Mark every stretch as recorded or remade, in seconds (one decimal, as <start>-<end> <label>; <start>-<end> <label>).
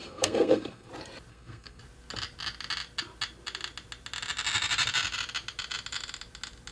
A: 0.0-0.9 remade; 0.9-1.3 recorded; 1.3-1.8 remade; 1.8-6.7 recorded